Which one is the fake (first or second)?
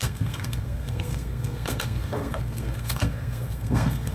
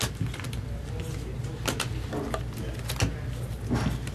first